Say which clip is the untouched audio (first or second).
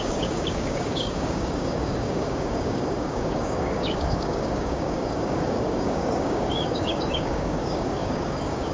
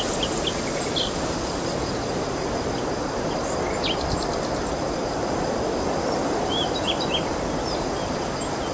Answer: second